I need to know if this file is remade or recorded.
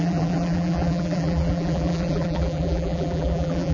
remade